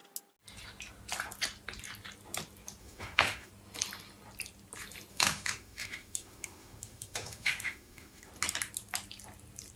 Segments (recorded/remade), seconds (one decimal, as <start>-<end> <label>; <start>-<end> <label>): 0.0-2.8 recorded; 2.8-3.5 remade; 3.5-5.1 recorded; 5.1-8.3 remade; 8.3-9.8 recorded